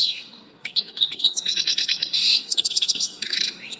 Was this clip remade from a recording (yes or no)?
yes